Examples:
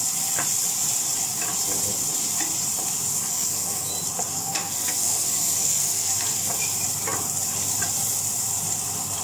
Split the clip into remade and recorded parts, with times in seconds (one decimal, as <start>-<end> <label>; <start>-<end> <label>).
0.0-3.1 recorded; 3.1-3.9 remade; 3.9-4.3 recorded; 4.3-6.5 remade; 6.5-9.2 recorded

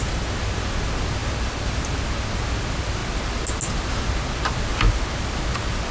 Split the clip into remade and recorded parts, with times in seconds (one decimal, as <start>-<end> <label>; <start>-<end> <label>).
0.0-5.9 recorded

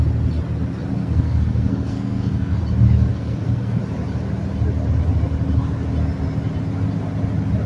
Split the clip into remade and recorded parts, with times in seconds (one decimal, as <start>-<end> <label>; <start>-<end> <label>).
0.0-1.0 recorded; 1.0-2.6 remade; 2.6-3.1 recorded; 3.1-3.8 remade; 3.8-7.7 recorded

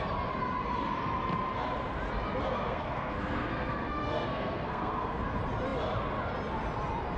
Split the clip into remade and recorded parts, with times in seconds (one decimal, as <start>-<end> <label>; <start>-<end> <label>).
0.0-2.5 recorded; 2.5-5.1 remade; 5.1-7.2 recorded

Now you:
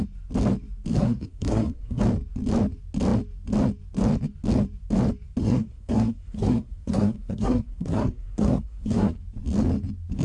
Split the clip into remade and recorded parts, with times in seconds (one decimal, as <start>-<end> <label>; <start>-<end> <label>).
0.0-0.9 recorded; 0.9-2.0 remade; 2.0-5.4 recorded; 5.4-9.2 remade; 9.2-10.2 recorded